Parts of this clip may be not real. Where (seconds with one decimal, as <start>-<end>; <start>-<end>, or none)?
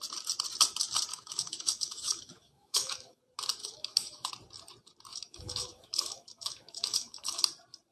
1.1-3.2; 3.6-4.3; 5.1-7.4